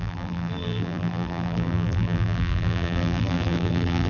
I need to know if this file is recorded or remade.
remade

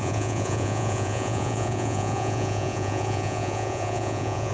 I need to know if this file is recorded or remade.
remade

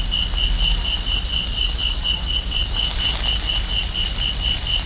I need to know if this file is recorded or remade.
recorded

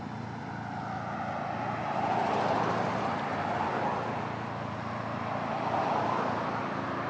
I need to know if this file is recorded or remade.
recorded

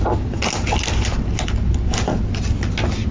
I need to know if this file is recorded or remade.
recorded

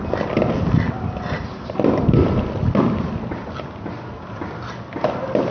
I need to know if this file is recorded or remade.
recorded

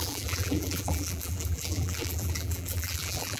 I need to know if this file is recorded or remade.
remade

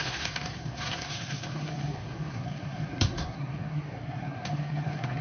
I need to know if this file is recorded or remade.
remade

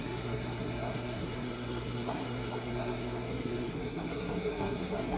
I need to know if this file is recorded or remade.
remade